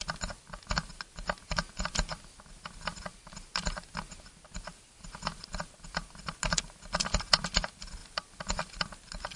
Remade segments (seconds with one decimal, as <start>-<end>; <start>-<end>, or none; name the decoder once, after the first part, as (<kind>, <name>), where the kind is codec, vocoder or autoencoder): none